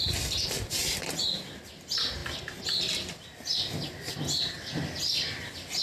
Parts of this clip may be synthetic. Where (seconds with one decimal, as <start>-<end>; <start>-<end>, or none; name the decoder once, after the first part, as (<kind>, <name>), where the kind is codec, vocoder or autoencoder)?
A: none